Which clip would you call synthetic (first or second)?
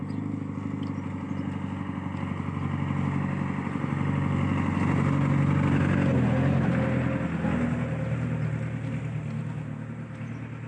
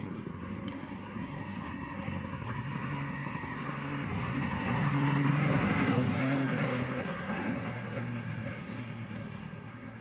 second